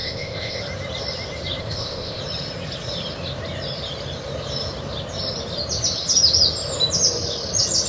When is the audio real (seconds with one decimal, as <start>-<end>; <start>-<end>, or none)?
0.6-1.6; 2.2-7.9